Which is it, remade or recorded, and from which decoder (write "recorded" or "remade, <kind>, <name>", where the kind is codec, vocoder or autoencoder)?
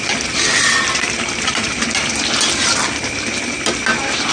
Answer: recorded